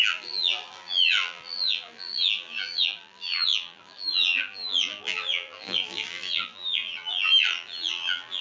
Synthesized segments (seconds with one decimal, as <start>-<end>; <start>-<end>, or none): 0.0-8.4